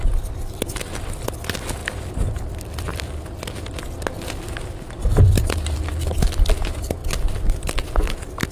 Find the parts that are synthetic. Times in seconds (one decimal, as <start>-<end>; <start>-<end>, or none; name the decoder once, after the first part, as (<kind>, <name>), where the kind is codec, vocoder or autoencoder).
none